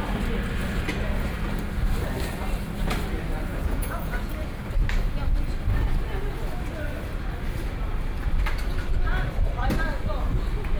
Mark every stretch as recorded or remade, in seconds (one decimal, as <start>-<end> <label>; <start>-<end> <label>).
0.0-3.5 recorded; 3.5-4.3 remade; 4.3-10.8 recorded